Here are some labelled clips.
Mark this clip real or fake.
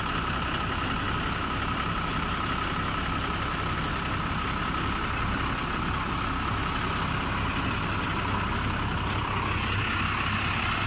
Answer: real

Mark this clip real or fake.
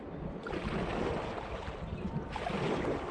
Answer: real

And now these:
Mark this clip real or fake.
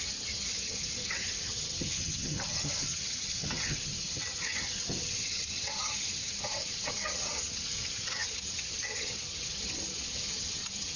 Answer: fake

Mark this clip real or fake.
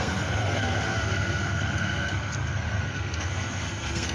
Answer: fake